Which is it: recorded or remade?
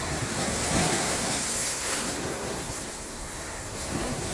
remade